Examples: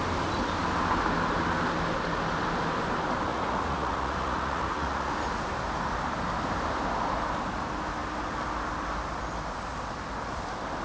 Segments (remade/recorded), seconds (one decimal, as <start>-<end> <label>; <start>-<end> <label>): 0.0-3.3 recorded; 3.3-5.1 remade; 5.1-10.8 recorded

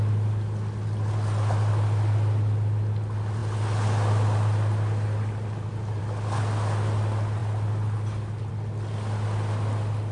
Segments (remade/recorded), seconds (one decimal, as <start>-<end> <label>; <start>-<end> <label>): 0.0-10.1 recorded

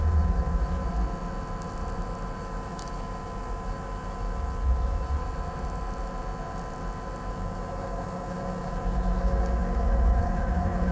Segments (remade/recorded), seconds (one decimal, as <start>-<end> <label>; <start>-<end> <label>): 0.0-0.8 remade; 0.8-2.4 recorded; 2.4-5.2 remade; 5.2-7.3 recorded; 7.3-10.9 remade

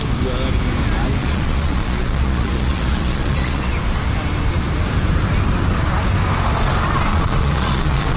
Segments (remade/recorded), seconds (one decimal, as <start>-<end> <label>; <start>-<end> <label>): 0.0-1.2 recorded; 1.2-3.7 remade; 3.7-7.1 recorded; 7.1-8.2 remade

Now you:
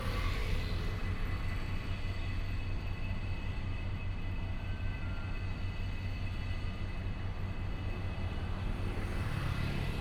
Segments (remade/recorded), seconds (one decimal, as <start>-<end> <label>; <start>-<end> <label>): 0.0-10.0 recorded